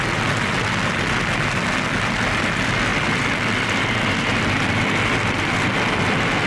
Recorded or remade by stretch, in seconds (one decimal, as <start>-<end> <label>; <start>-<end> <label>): 0.0-6.5 recorded